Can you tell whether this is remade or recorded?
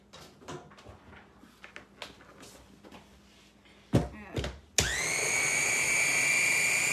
recorded